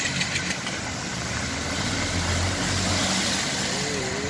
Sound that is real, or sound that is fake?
real